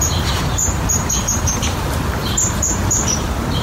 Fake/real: fake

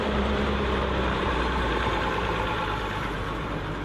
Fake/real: fake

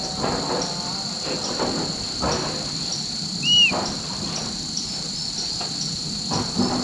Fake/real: real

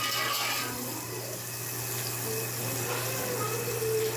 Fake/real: real